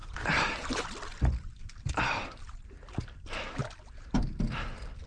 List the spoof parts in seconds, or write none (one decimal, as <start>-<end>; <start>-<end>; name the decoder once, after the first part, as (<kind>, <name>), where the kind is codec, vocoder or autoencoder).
0.0-3.6 (vocoder, BigVGAN v2); 4.2-5.1